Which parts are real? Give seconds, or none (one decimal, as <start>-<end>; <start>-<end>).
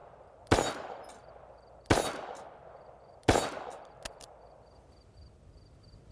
0.0-6.1